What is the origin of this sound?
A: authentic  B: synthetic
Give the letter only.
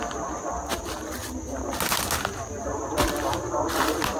A